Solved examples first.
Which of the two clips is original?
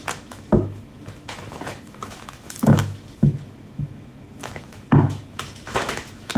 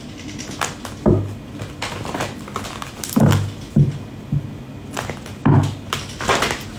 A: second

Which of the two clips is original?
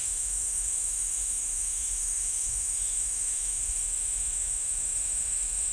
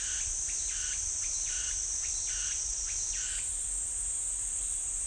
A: second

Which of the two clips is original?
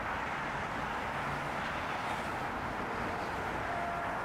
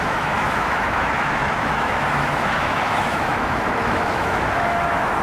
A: first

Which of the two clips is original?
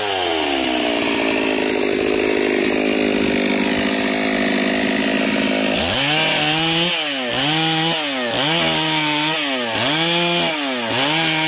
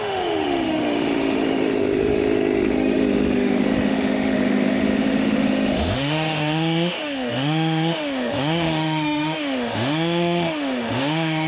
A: first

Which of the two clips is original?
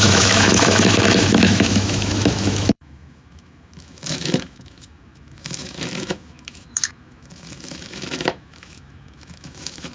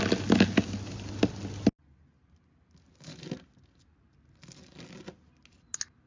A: second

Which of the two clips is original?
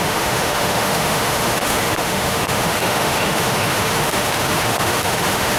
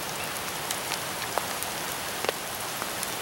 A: second